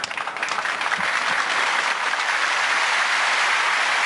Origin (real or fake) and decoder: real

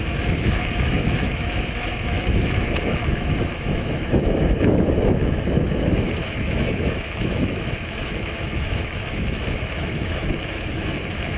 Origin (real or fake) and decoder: fake, autoencoder, DAC-VAE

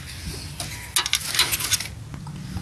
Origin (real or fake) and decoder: real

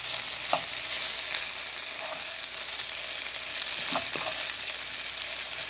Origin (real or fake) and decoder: real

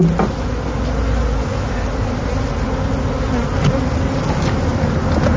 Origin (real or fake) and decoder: real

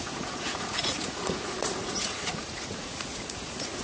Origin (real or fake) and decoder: fake, vocoder, Vocos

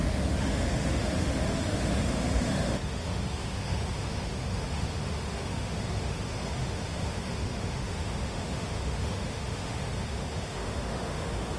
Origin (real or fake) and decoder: fake, autoencoder, DAC-VAE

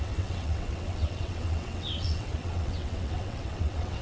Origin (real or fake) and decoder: fake, vocoder, WaveNeXt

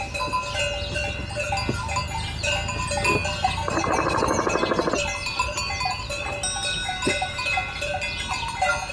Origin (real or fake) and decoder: real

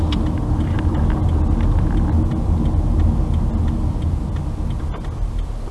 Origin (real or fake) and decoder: real